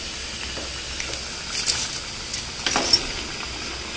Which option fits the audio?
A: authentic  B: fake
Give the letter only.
A